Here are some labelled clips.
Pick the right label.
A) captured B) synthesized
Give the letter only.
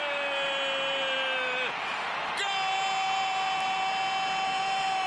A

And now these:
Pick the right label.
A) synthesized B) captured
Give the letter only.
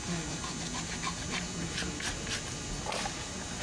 B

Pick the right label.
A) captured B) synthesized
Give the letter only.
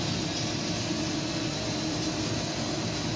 A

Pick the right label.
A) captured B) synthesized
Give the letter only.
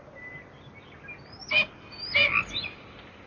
A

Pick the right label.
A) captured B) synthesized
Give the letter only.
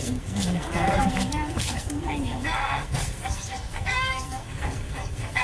B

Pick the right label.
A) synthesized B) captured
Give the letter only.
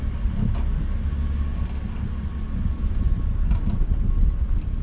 B